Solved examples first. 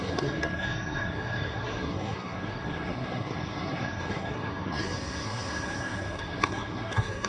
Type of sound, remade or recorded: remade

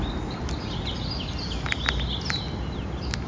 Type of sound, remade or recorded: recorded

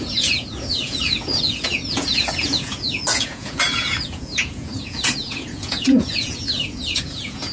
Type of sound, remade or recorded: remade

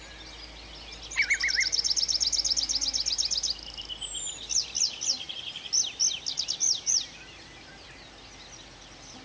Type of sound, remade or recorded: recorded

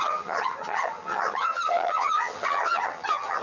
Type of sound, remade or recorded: remade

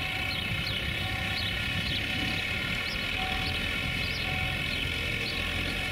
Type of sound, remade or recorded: recorded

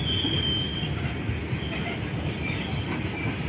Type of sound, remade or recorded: recorded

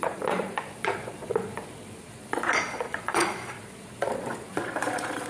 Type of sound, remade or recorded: remade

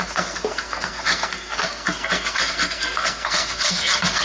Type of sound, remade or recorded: remade